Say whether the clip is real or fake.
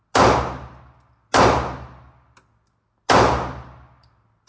real